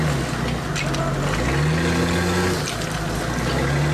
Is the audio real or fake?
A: real